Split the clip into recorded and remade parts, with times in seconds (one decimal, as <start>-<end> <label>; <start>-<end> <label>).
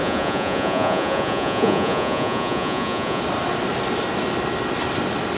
0.0-3.2 remade; 3.2-5.4 recorded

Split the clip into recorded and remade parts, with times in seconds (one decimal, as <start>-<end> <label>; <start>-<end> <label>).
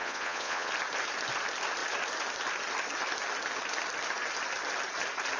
0.0-0.7 remade; 0.7-5.4 recorded